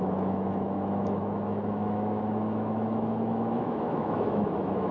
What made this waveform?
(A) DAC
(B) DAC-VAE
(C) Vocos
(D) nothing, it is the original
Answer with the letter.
B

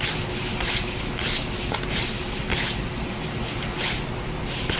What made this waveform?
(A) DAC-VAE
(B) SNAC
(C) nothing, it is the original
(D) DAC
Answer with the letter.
C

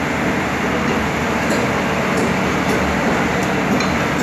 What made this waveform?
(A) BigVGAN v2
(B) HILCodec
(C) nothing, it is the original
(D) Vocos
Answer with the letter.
C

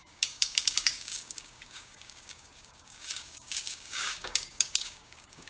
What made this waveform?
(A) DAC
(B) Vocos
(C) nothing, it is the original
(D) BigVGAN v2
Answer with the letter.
A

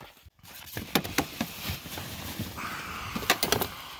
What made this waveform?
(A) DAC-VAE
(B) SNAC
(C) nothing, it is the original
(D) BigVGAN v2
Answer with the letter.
C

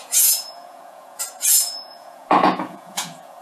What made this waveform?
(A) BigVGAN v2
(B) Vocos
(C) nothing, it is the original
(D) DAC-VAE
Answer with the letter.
B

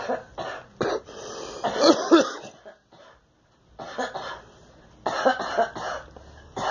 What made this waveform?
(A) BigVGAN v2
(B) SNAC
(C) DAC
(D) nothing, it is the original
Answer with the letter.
D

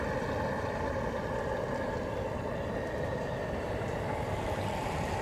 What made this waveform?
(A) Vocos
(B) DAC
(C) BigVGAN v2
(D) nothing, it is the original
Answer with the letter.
D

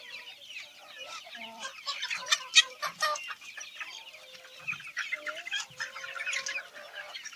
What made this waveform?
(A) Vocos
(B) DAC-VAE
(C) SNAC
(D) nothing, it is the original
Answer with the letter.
D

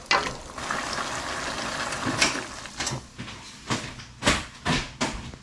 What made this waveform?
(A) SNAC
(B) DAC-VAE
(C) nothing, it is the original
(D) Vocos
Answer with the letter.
C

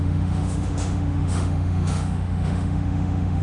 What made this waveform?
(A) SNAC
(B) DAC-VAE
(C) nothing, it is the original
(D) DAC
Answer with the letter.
B